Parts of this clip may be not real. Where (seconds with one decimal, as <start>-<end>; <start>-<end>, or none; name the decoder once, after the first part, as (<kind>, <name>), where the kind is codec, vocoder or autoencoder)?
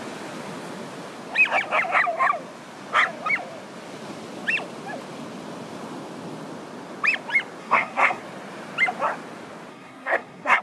7.6-8.2 (codec, SNAC); 9.7-10.6